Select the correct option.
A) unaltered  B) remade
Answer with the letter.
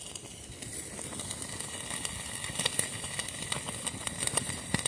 A